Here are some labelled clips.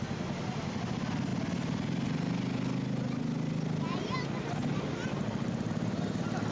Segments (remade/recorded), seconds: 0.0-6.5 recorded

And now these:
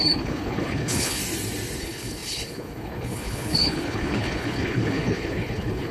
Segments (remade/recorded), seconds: 0.0-1.2 remade; 1.2-1.8 recorded; 1.8-5.9 remade

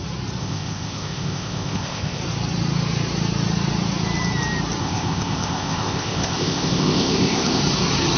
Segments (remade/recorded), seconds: 0.0-0.4 recorded; 0.4-2.2 remade; 2.2-4.8 recorded; 4.8-7.6 remade; 7.6-8.2 recorded

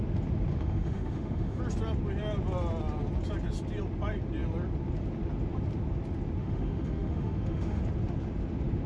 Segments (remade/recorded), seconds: 0.0-0.5 recorded; 0.5-1.6 remade; 1.6-6.4 recorded; 6.4-7.8 remade; 7.8-8.9 recorded

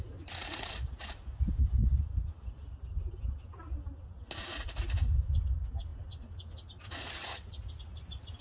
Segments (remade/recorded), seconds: 0.0-8.4 recorded